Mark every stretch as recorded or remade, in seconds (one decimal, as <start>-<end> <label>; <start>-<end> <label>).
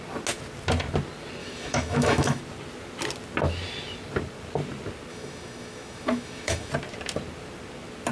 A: 0.0-1.4 recorded; 1.4-2.4 remade; 2.4-5.1 recorded; 5.1-6.7 remade; 6.7-8.1 recorded